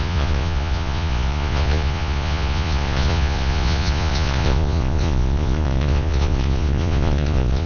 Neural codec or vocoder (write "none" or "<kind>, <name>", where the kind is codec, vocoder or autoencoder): vocoder, Vocos